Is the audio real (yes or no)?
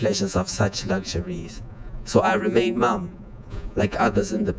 no